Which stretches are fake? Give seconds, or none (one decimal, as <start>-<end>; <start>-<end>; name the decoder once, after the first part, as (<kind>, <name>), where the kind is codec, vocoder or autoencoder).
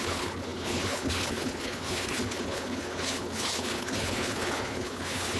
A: 0.0-5.4 (codec, HILCodec)